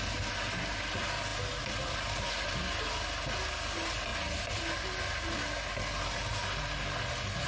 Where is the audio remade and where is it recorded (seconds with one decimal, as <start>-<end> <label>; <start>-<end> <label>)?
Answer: 0.0-7.5 recorded